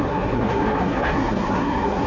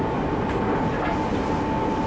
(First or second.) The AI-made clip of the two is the first